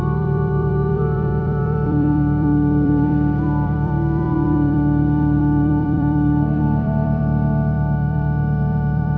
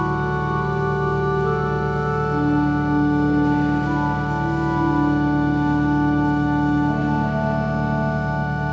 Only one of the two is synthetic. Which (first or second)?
first